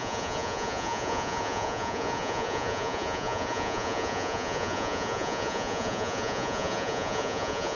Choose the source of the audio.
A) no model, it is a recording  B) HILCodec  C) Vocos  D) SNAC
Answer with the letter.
C